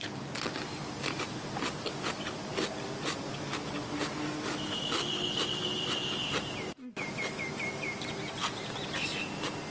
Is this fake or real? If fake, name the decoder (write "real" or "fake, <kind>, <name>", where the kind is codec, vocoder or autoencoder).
real